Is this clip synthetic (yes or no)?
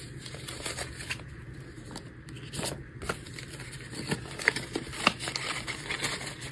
no